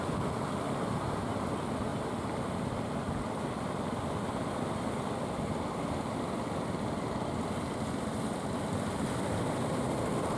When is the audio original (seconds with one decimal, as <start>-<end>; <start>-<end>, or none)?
0.0-10.4